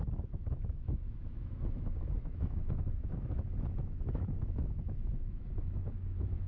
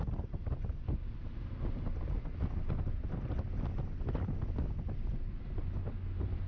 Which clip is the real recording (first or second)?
second